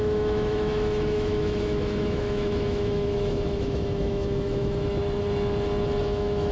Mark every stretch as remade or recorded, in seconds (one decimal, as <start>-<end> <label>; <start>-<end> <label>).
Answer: 0.0-5.0 remade; 5.0-6.0 recorded; 6.0-6.5 remade